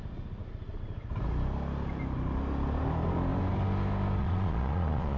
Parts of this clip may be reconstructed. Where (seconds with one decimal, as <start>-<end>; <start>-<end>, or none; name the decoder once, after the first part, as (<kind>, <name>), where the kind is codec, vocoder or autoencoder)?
4.2-5.2 (vocoder, Vocos)